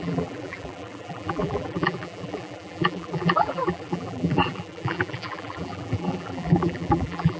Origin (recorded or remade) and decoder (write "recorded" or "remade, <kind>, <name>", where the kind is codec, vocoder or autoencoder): remade, vocoder, BigVGAN v2